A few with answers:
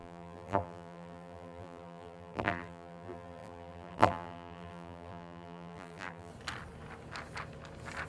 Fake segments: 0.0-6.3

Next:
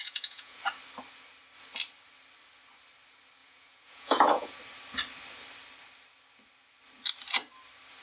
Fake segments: 0.0-0.6; 3.4-4.6